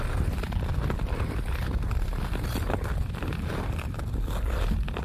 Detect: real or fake real